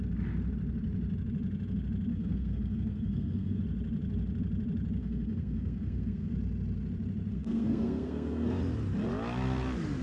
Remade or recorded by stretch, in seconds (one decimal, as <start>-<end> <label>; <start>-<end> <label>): 0.0-2.1 recorded; 2.1-3.6 remade; 3.6-5.0 recorded; 5.0-6.3 remade; 6.3-7.3 recorded; 7.3-8.6 remade; 8.6-10.0 recorded